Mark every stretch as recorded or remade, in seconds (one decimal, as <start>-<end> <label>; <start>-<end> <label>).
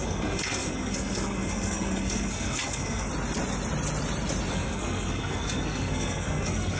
0.0-3.1 remade; 3.1-4.5 recorded; 4.5-6.8 remade